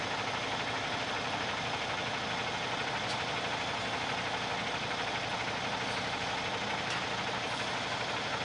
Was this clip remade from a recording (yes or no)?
no